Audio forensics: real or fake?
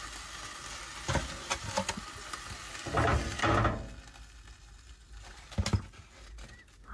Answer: real